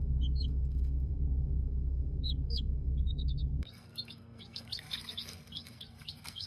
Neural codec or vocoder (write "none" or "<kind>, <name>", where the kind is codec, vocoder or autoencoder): codec, SNAC